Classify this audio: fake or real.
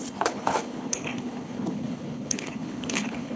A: fake